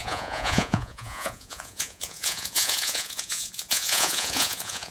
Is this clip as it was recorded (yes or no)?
no